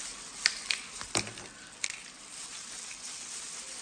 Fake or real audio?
real